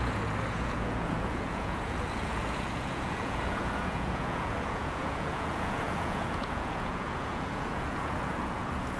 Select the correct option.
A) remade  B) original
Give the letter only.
A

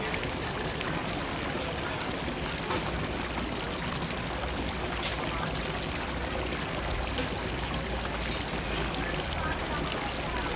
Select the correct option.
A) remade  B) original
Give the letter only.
B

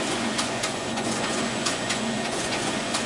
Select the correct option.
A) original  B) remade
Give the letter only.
B